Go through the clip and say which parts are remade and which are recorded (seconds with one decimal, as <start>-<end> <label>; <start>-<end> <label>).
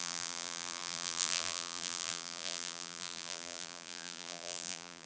0.0-5.1 remade